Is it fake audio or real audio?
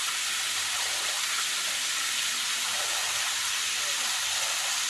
real